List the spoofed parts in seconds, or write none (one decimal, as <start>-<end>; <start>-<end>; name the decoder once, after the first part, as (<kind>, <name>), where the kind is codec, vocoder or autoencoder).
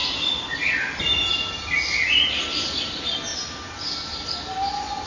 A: none